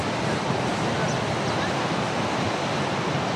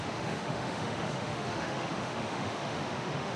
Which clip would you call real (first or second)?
first